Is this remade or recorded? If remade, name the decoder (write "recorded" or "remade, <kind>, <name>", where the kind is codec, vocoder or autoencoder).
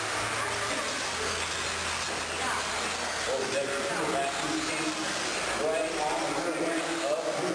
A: recorded